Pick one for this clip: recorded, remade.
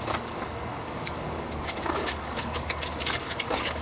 remade